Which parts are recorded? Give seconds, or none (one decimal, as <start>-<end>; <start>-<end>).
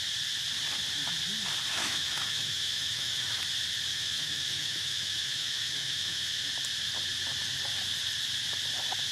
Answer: 0.0-1.8; 3.4-3.9; 6.5-9.1